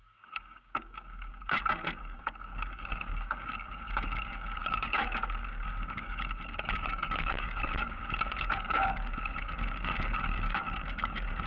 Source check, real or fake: fake